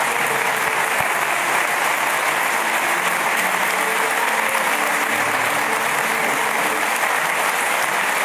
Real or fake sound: real